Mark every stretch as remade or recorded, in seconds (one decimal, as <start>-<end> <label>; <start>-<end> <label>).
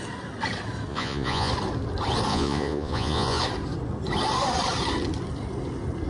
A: 0.0-0.9 recorded; 0.9-1.5 remade; 1.5-2.3 recorded; 2.3-3.4 remade; 3.4-6.1 recorded